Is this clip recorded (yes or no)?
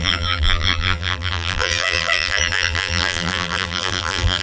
no